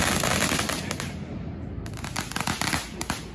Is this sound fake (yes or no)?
yes